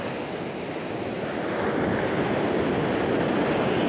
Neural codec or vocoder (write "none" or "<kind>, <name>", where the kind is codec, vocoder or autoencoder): none